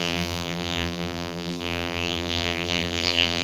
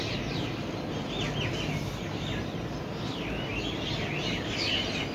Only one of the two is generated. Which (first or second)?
first